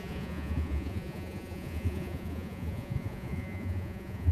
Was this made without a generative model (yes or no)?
no